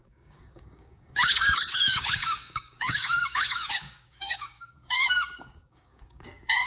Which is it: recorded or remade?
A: remade